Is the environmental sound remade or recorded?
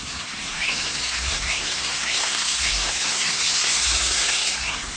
remade